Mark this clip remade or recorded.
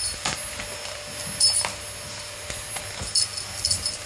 recorded